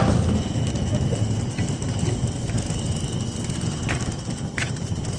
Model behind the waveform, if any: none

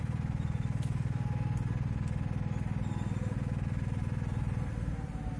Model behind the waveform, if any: none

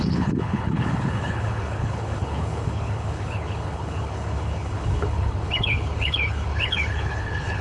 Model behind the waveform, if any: codec, HILCodec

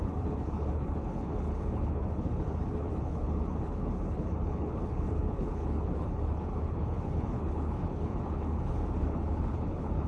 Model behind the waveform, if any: codec, HILCodec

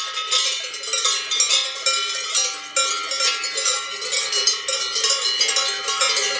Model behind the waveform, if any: none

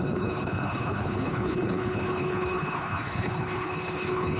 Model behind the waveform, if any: codec, HILCodec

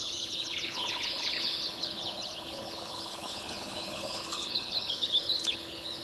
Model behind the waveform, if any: codec, HILCodec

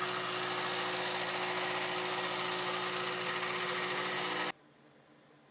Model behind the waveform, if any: none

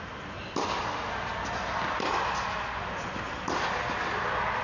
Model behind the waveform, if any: none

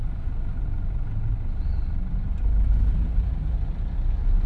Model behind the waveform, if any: none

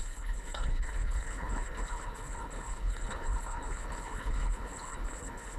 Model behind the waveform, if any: codec, HILCodec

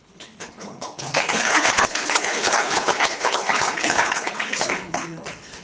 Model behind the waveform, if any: codec, HILCodec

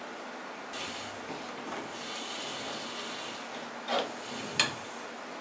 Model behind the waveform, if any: none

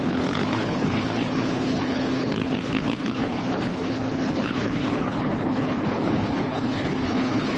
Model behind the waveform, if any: codec, HILCodec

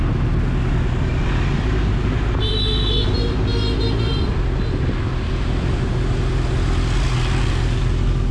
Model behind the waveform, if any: none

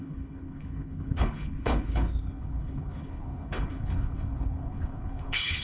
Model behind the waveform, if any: codec, HILCodec